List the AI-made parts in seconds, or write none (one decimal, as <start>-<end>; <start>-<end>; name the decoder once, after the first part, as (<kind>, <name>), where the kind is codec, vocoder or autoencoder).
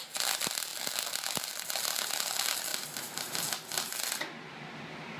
2.7-3.3 (vocoder, BigVGAN v2)